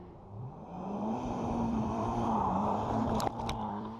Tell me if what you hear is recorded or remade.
remade